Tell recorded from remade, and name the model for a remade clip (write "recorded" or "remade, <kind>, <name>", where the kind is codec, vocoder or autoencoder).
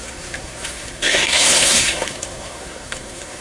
remade, codec, SNAC